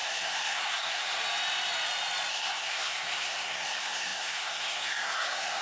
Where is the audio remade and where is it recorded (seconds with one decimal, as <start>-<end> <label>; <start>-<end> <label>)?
0.0-1.2 remade; 1.2-2.3 recorded; 2.3-5.6 remade